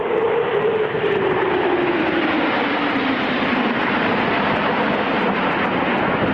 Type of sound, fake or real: real